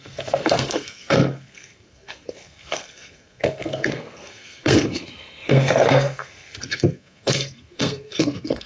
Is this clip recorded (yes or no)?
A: no